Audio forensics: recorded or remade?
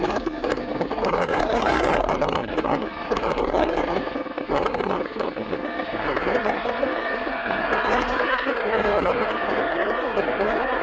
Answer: remade